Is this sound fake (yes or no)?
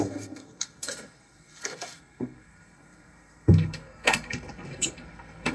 yes